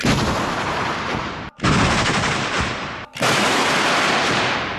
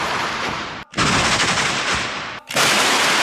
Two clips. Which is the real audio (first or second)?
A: second